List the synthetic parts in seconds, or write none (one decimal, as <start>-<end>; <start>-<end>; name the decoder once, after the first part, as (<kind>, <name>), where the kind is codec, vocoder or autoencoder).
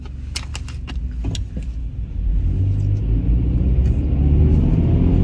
none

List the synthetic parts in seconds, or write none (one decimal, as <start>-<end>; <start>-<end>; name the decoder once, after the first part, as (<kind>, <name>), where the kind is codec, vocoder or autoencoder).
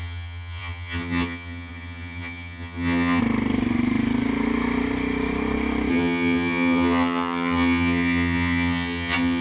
0.0-3.2 (vocoder, HiFi-GAN); 5.9-9.4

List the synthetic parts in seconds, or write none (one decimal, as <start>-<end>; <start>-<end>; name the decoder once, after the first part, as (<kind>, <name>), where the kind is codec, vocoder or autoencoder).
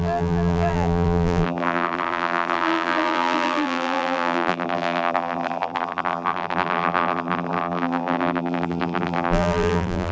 0.0-10.1 (vocoder, BigVGAN v2)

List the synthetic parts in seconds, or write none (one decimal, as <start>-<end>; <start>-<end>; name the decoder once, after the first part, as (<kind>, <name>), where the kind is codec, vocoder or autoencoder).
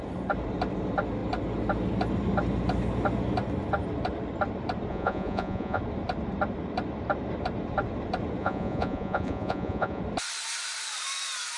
4.9-5.8 (vocoder, Vocos); 8.4-10.0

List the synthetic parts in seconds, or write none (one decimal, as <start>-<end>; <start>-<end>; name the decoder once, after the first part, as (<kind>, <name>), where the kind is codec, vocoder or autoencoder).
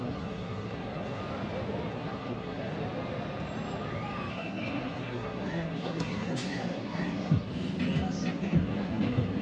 0.0-1.2 (codec, SNAC); 1.9-2.7; 4.3-7.5; 8.3-9.4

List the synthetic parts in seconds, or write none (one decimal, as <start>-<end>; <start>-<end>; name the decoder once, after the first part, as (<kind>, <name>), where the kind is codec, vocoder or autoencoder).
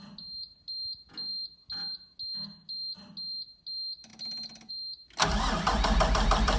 none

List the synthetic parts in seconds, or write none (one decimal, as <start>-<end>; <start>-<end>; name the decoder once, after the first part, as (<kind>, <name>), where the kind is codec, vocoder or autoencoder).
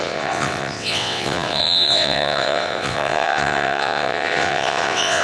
0.0-5.2 (vocoder, WaveNeXt)